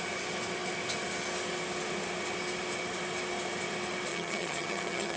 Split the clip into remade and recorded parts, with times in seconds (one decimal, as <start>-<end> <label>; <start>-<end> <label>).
0.0-4.1 recorded; 4.1-5.2 remade